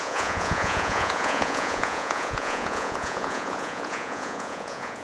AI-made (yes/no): yes